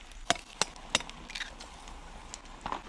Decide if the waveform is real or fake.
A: real